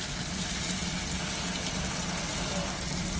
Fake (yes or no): no